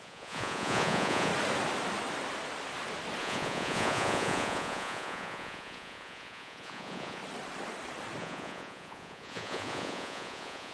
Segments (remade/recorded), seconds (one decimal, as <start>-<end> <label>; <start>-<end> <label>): 0.0-1.3 remade; 1.3-3.2 recorded; 3.2-7.2 remade; 7.2-8.2 recorded; 8.2-10.7 remade